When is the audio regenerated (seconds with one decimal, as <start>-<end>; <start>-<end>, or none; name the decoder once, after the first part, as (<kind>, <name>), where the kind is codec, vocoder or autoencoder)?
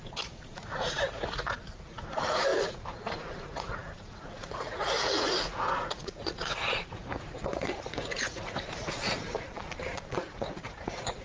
0.0-9.5 (vocoder, Vocos); 10.3-11.2